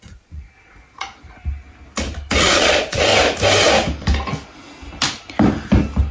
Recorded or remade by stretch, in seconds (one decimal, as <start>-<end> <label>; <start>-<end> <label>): 0.0-1.1 remade; 1.1-2.4 recorded; 2.4-3.1 remade; 3.1-6.1 recorded